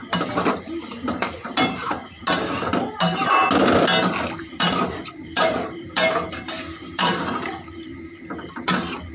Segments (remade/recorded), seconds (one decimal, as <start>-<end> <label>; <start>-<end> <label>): 0.0-0.6 recorded; 0.6-2.2 remade; 2.2-4.4 recorded; 4.4-9.1 remade